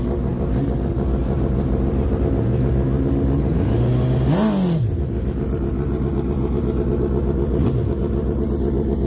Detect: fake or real real